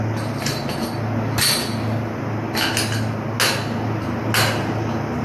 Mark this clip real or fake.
real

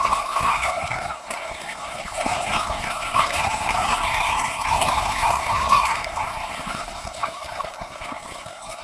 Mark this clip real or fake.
fake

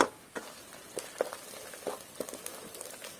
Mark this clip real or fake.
real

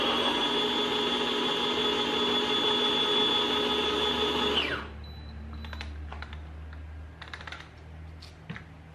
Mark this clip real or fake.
real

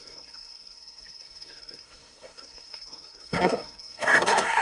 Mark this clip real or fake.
fake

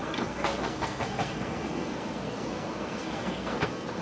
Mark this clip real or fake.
fake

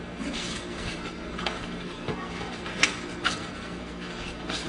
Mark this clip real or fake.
fake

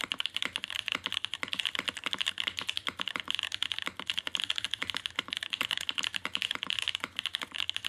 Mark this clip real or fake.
real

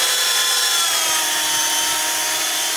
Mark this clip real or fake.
real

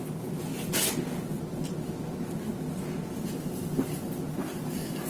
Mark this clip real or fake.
real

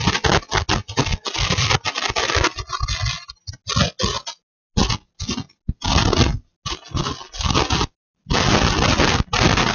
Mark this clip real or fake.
real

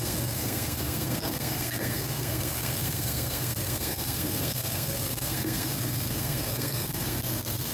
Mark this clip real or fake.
fake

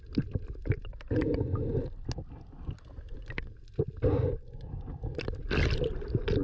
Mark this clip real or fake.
real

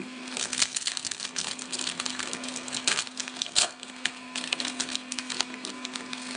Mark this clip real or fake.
fake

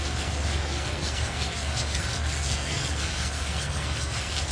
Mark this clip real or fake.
fake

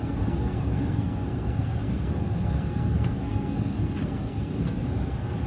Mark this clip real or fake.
fake